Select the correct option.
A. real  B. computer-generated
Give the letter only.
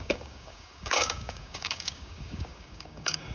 B